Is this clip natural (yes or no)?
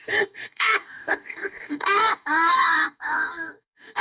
no